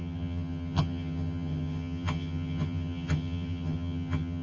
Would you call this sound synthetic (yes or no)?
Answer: yes